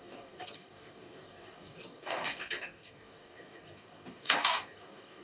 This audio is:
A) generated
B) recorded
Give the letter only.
A